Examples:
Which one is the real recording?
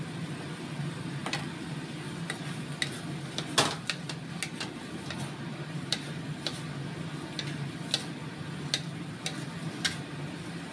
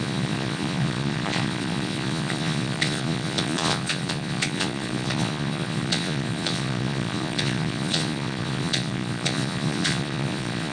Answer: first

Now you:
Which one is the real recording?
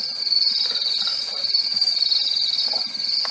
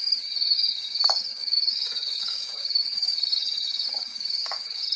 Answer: first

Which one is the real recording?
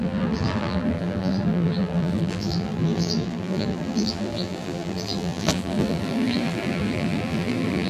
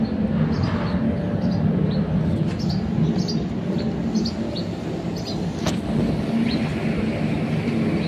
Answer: second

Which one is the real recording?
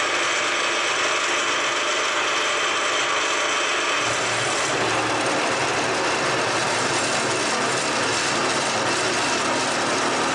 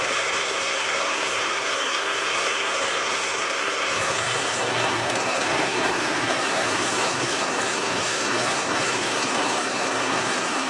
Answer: first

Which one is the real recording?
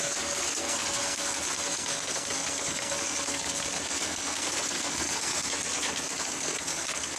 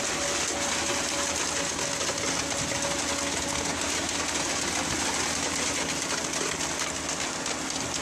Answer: second